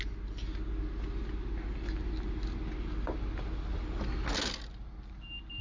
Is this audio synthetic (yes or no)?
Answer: no